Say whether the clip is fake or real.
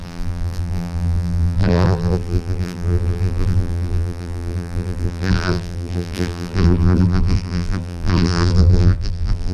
fake